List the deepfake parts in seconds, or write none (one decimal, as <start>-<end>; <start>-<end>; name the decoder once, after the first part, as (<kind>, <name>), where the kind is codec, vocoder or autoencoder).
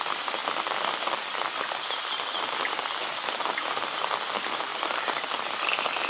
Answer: 4.7-5.4 (vocoder, BigVGAN v2)